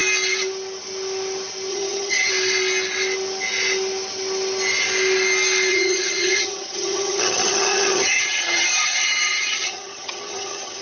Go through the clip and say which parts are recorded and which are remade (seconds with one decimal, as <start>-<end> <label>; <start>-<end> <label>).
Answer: 0.0-1.7 recorded; 1.7-2.3 remade; 2.3-5.7 recorded; 5.7-10.8 remade